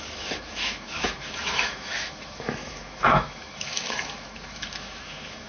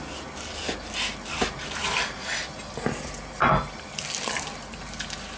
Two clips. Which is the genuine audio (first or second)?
second